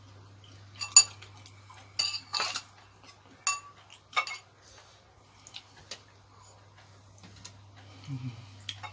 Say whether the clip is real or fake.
real